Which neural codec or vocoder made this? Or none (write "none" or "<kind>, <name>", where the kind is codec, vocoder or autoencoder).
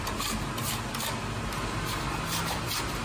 none